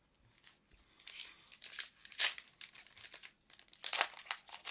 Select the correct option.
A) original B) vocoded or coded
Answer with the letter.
A